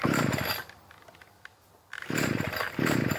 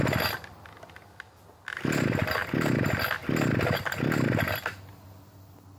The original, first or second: second